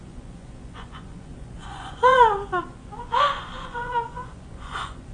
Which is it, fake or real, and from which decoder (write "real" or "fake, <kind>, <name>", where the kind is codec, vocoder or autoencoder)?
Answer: fake, vocoder, Vocos